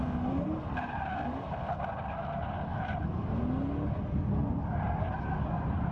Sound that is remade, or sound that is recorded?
recorded